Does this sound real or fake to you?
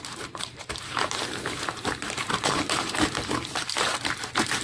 fake